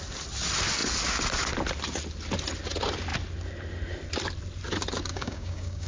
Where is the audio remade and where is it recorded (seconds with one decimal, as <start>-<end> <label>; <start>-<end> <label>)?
0.0-5.1 recorded; 5.1-5.9 remade